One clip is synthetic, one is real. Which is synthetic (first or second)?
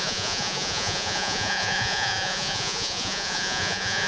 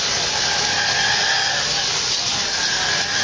first